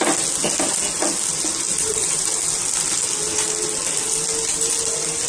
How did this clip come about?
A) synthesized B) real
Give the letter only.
B